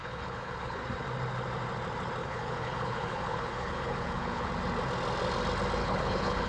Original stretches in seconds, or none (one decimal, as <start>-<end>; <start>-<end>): 0.8-2.2; 4.5-5.8